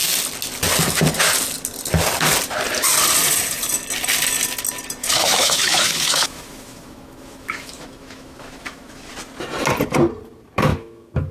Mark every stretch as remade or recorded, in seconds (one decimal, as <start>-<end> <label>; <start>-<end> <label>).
0.0-5.0 recorded; 5.0-9.1 remade; 9.1-10.7 recorded; 10.7-11.3 remade